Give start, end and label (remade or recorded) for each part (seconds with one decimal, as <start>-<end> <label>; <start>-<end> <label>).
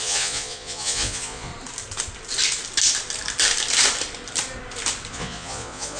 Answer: 0.0-1.5 remade; 1.5-5.1 recorded; 5.1-6.0 remade